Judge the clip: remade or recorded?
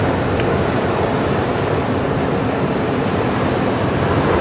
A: recorded